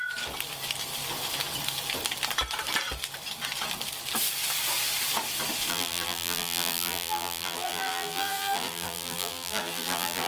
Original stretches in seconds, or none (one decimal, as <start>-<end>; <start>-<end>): 0.0-5.7